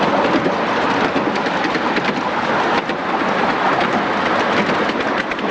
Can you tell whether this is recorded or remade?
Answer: recorded